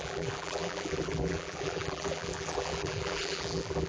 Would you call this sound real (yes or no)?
no